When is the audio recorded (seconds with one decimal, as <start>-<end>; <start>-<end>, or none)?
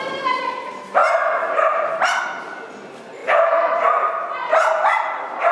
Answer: 0.0-3.2; 4.1-5.5